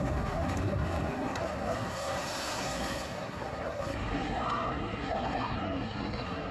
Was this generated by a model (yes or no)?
yes